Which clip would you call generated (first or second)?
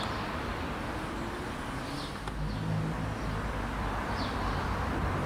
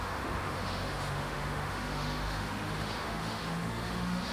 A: second